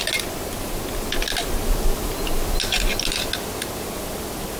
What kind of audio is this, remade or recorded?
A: recorded